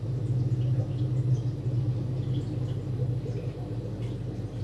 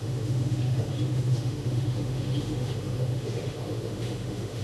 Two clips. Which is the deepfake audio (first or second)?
second